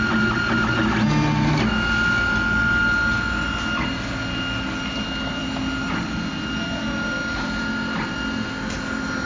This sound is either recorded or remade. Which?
recorded